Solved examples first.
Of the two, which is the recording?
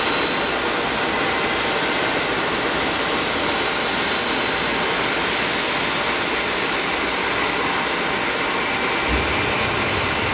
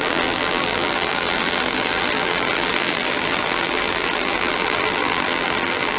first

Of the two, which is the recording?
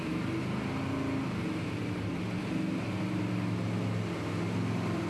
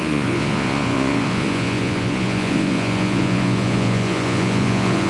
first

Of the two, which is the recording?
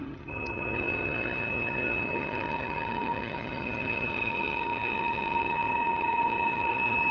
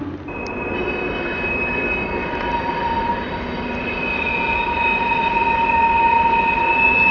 second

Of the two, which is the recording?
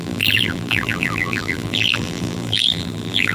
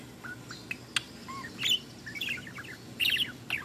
second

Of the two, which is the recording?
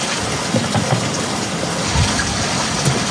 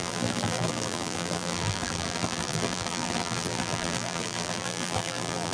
first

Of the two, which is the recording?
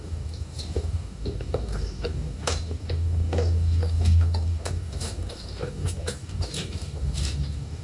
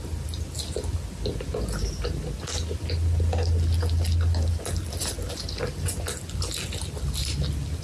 second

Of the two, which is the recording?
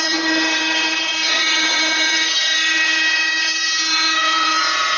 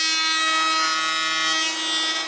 second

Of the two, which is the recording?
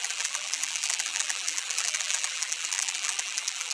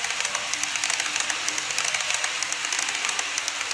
second